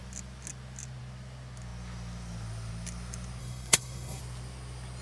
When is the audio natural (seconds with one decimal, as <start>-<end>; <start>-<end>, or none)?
0.0-3.4; 4.2-5.0